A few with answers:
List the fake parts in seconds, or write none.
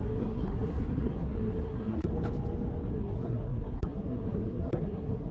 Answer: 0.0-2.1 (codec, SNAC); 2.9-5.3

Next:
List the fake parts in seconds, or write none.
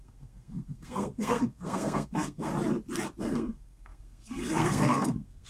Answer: 0.0-2.5 (codec, SNAC); 3.2-5.5